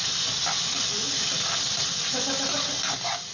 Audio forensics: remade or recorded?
recorded